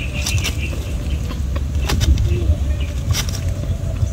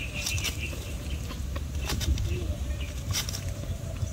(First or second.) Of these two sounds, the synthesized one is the second